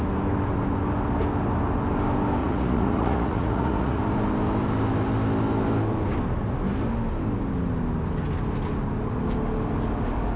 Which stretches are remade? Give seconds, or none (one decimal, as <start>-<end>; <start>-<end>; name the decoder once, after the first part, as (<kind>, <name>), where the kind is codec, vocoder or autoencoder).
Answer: 2.4-4.0 (vocoder, Vocos)